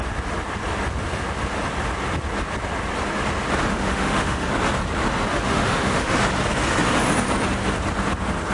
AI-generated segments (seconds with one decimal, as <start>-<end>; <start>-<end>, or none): 3.7-4.5; 5.3-6.2